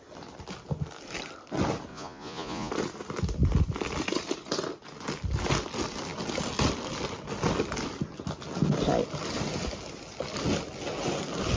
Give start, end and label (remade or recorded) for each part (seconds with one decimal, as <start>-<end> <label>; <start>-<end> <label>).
0.0-1.9 recorded; 1.9-2.7 remade; 2.7-11.6 recorded